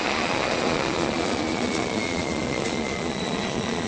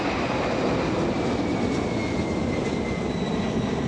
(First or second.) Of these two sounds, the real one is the second